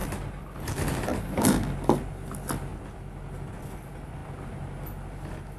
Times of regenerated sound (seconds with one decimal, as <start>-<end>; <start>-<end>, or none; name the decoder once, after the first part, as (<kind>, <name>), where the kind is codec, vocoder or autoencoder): none